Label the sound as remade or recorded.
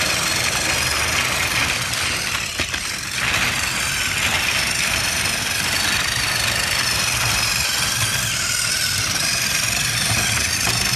recorded